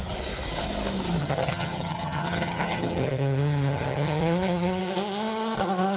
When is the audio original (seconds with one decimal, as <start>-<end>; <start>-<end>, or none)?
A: 0.0-1.2; 4.8-6.0